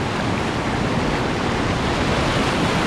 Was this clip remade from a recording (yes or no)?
no